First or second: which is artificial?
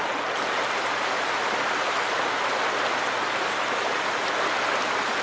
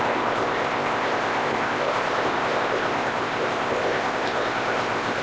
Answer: second